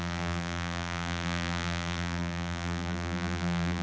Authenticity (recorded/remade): remade